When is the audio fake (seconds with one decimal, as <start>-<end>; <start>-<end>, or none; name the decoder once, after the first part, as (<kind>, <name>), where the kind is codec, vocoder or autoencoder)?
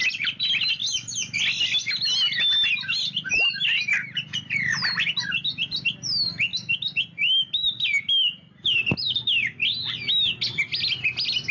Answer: none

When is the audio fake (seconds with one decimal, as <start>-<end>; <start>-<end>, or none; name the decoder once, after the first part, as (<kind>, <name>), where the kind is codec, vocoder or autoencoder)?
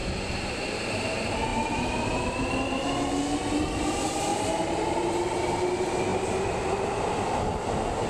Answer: 0.0-0.9 (vocoder, BigVGAN v2); 1.5-2.4